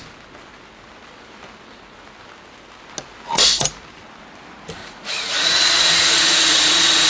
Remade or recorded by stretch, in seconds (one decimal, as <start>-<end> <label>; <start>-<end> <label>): 0.0-4.8 recorded; 4.8-7.1 remade